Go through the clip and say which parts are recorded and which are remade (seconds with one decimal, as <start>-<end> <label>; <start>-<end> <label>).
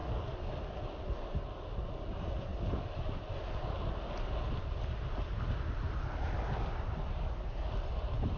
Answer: 0.0-8.4 recorded